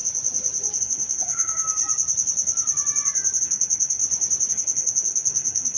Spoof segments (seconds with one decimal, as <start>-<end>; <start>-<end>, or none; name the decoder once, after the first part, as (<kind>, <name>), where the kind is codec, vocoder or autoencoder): 0.8-1.8 (codec, SNAC); 3.4-4.0; 4.5-5.8